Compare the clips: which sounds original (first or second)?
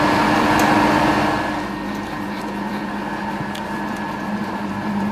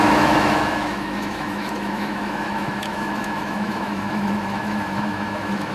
first